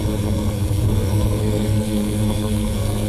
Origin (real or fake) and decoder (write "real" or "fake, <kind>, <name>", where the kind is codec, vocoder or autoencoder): fake, codec, SNAC